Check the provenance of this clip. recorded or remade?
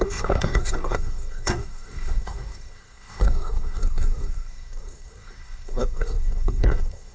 remade